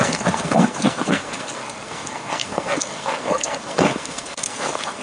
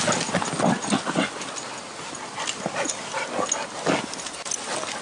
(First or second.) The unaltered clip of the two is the second